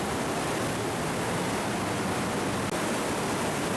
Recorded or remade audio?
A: recorded